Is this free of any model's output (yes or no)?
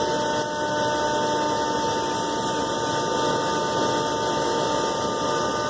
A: yes